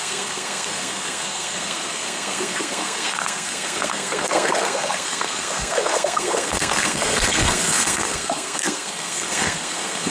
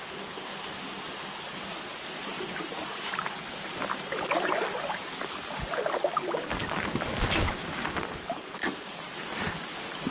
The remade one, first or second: first